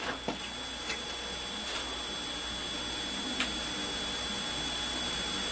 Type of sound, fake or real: real